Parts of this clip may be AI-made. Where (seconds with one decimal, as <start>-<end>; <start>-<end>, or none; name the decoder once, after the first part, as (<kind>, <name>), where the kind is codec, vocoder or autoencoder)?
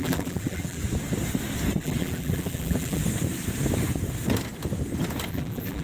0.0-0.8 (vocoder, BigVGAN v2); 1.8-3.0; 5.3-5.8